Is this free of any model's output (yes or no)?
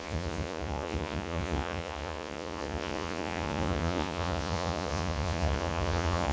no